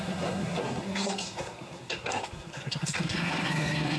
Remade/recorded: remade